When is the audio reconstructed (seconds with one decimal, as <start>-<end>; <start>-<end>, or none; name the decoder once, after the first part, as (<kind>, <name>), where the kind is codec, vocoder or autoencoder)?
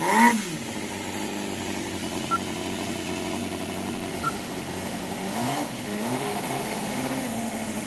4.1-7.9 (autoencoder, DAC-VAE)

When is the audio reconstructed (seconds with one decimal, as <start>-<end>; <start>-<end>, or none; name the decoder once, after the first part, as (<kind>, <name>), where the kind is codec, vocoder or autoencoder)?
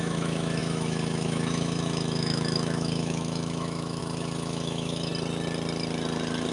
0.0-5.1 (autoencoder, DAC-VAE)